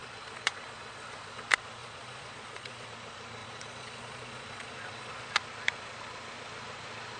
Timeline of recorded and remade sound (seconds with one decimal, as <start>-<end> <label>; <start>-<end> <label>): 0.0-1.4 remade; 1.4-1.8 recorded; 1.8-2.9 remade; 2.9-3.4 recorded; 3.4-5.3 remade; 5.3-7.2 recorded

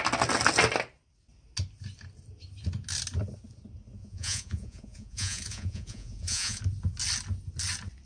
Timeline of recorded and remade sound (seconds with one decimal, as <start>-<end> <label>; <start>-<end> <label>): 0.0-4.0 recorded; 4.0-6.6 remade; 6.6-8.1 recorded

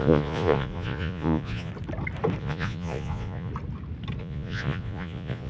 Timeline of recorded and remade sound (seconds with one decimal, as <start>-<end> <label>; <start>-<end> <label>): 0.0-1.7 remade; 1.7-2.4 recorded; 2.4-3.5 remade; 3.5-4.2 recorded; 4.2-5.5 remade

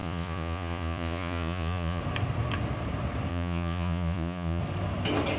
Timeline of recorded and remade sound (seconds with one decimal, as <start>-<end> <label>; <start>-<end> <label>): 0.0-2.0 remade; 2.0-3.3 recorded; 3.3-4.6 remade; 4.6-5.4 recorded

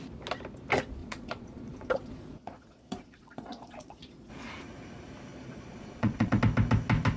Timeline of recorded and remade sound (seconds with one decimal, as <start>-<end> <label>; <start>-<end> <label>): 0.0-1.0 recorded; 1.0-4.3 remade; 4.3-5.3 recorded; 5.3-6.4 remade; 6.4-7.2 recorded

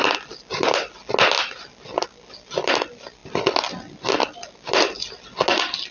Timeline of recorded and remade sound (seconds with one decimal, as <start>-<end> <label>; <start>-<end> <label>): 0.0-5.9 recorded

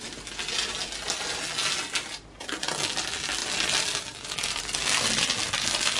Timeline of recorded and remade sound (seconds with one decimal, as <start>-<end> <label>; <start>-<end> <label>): 0.0-6.0 recorded